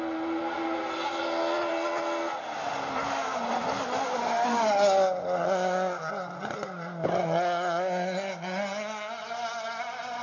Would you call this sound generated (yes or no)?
no